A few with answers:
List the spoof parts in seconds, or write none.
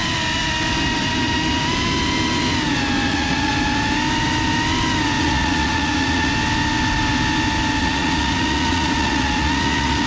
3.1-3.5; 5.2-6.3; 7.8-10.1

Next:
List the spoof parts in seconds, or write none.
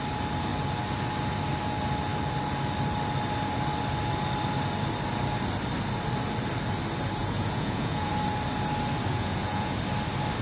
7.2-8.1; 9.1-9.8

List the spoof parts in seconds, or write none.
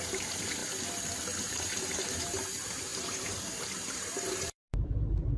0.0-0.6; 1.4-5.4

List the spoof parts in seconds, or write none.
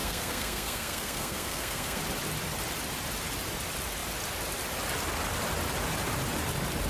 0.0-2.0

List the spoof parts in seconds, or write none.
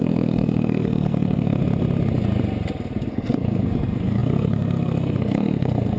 0.0-1.6; 3.1-6.0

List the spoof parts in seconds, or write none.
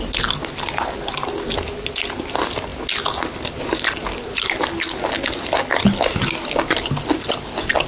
none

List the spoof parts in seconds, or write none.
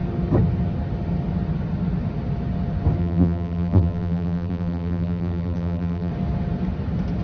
3.0-6.1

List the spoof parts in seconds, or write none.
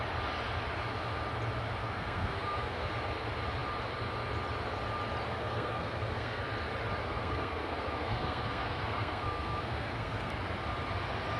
1.8-2.9; 5.3-6.4; 7.0-10.3